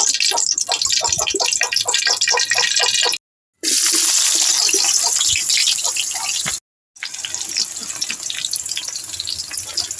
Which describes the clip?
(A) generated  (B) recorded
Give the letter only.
B